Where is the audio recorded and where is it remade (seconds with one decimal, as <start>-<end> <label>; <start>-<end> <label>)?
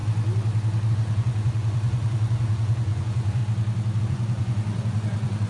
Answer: 0.0-0.9 recorded; 0.9-3.4 remade; 3.4-4.0 recorded; 4.0-5.5 remade